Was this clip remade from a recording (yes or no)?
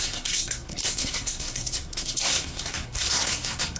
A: yes